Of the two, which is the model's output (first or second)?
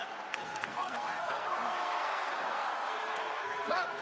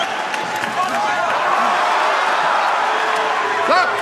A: first